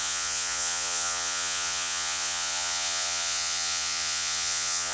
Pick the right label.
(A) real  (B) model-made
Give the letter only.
B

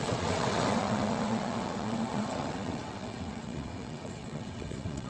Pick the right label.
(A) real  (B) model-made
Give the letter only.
B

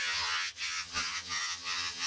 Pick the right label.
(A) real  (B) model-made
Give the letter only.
B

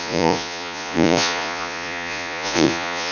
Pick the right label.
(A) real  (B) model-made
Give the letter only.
B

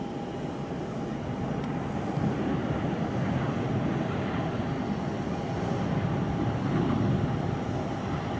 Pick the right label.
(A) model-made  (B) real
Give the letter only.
B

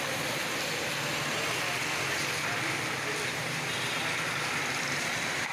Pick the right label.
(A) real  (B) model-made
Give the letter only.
A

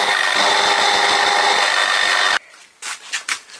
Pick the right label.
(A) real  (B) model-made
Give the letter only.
A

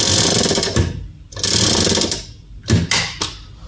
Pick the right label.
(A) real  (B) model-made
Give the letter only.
A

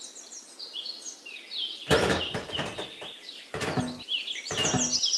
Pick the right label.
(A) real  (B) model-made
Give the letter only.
A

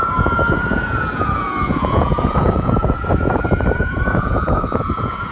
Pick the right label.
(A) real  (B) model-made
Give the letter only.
B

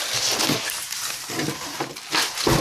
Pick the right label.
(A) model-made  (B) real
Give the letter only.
B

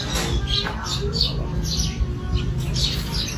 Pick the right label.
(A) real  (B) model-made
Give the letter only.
A